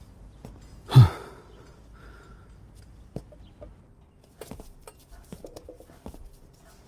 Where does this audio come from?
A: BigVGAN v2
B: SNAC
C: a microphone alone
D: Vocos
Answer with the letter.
C